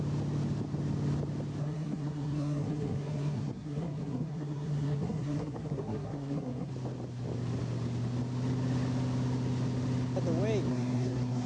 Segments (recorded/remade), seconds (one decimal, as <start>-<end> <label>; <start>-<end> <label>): 0.0-1.6 recorded; 1.6-6.7 remade; 6.7-10.7 recorded; 10.7-11.5 remade